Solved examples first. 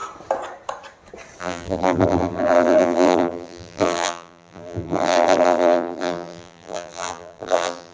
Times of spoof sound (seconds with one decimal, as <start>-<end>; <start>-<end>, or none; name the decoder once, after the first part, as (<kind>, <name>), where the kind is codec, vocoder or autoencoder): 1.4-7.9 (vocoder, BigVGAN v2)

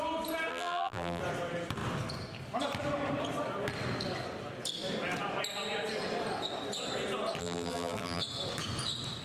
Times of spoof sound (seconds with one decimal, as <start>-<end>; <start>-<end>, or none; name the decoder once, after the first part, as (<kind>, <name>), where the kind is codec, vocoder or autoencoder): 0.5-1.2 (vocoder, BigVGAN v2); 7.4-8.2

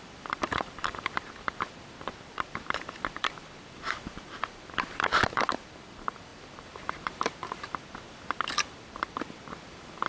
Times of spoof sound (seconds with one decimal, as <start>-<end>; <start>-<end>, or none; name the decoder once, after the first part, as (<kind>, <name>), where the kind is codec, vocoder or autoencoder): 0.0-10.1 (vocoder, BigVGAN v2)

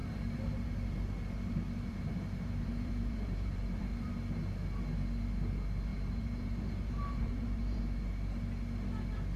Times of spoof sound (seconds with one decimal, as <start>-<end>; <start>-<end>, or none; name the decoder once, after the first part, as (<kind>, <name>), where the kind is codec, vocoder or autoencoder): 0.0-4.1 (vocoder, BigVGAN v2); 5.9-7.8

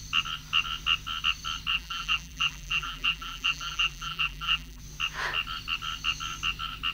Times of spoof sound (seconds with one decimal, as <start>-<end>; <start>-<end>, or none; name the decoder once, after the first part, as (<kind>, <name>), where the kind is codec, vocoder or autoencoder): 1.7-4.8 (vocoder, BigVGAN v2)

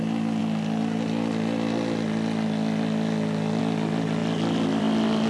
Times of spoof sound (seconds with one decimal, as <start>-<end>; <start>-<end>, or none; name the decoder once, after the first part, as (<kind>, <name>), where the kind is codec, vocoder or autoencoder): none

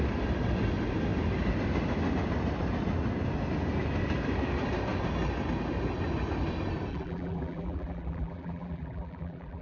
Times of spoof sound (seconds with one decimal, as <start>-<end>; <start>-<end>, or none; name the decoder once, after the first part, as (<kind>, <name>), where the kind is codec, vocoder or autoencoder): 6.9-9.6 (vocoder, BigVGAN v2)

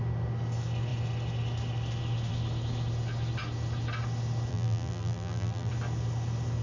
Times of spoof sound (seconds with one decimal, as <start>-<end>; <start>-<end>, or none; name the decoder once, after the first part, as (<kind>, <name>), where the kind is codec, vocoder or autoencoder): 4.5-5.7 (vocoder, BigVGAN v2)